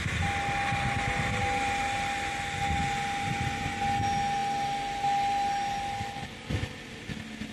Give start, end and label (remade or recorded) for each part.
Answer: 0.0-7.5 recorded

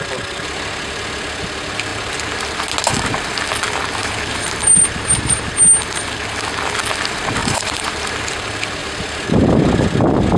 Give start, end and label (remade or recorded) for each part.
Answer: 0.0-4.0 recorded; 4.0-5.5 remade; 5.5-7.4 recorded; 7.4-8.3 remade; 8.3-8.8 recorded; 8.8-9.4 remade; 9.4-10.4 recorded

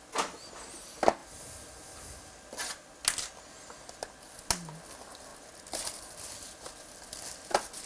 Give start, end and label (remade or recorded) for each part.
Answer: 0.0-7.9 recorded

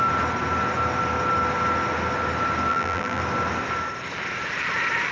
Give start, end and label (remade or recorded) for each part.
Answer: 0.0-2.7 recorded; 2.7-3.2 remade; 3.2-5.1 recorded